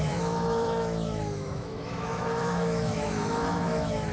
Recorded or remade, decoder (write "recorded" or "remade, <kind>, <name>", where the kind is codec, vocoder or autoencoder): remade, autoencoder, DAC-VAE